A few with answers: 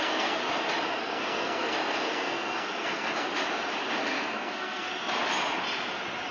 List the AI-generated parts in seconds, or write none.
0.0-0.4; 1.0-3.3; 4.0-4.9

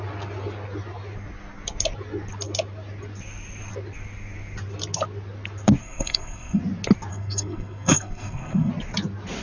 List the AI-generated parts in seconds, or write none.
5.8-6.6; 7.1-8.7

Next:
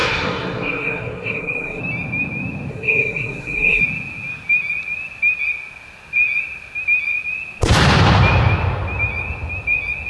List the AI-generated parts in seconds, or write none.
0.0-1.8; 2.7-3.8